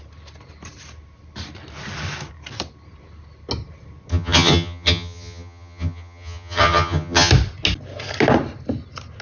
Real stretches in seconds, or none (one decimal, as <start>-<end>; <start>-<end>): 0.0-4.1; 7.3-9.2